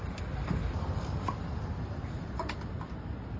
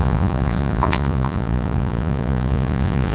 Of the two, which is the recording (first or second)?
first